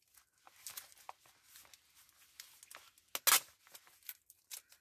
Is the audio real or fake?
real